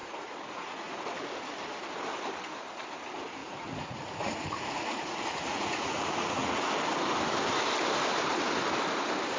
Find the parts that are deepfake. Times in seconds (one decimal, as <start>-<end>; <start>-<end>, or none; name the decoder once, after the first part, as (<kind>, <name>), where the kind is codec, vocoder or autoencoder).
0.0-1.0 (vocoder, Vocos); 3.4-6.7